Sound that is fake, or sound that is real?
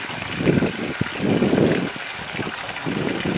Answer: real